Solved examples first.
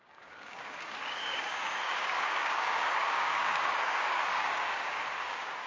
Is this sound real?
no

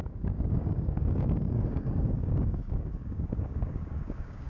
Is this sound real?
no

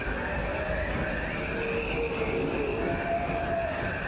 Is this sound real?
yes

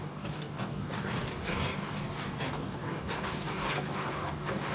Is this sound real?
no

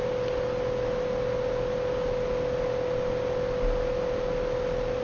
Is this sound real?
yes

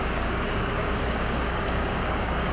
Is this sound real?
no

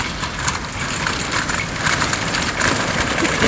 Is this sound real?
yes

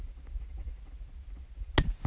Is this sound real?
yes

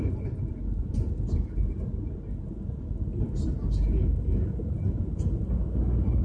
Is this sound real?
yes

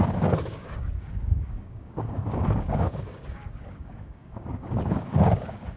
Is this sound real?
no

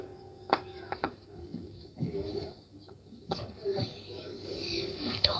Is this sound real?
no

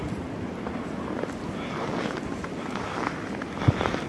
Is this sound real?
yes